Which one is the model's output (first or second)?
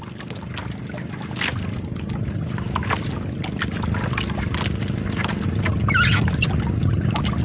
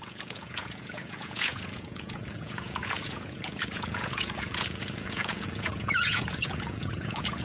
second